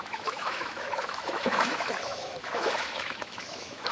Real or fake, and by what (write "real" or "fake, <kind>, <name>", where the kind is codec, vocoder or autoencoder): fake, autoencoder, DAC-VAE